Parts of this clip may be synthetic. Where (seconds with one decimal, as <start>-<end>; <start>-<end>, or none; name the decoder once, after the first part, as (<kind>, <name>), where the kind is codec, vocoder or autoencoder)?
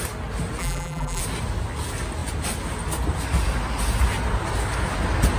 0.6-1.2 (vocoder, BigVGAN v2)